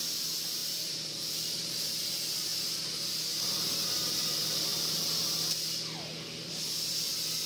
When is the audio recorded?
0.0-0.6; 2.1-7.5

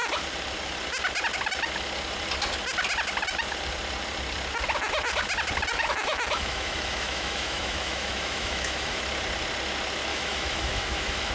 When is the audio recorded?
0.0-5.7; 9.0-10.1

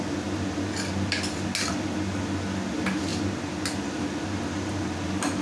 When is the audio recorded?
0.0-5.4

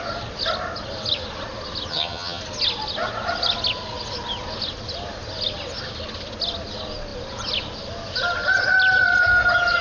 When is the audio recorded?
0.0-1.9; 2.4-9.8

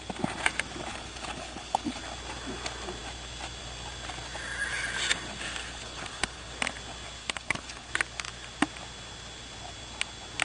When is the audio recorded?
0.0-0.9; 2.0-5.6; 6.5-7.2; 7.9-10.4